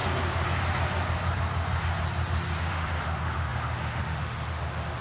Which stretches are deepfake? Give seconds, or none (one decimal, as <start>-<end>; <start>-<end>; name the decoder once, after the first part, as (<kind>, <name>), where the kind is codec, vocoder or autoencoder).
2.6-5.0 (autoencoder, DAC-VAE)